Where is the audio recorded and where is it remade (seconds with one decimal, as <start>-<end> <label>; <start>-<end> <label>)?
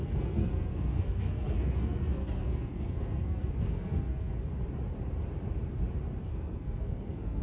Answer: 0.0-4.5 remade; 4.5-6.2 recorded; 6.2-7.4 remade